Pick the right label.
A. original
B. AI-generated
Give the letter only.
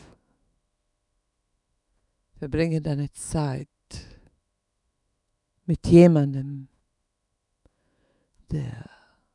B